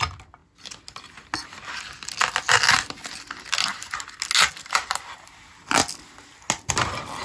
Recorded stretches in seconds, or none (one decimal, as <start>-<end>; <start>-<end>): 0.0-7.2